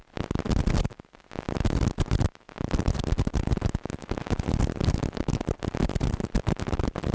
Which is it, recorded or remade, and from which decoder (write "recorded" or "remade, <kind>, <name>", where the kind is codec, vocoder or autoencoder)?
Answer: recorded